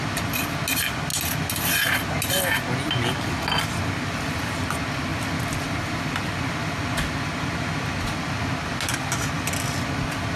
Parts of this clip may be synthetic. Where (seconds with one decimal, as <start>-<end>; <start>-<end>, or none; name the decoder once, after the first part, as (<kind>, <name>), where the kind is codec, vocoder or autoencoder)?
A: none